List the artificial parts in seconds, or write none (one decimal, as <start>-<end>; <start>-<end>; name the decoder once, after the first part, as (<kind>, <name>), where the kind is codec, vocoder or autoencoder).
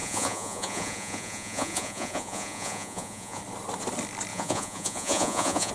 0.0-3.4 (vocoder, Vocos); 4.3-5.7